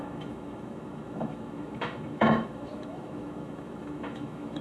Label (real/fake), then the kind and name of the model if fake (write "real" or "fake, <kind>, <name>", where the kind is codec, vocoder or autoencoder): fake, autoencoder, DAC-VAE